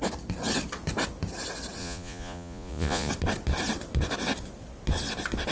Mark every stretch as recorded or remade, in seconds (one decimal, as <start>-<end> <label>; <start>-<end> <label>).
0.0-1.8 recorded; 1.8-3.1 remade; 3.1-5.5 recorded